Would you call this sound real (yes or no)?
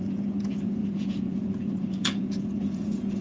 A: no